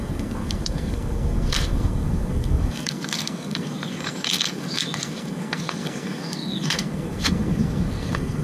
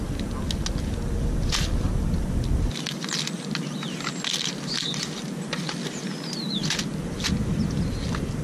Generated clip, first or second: first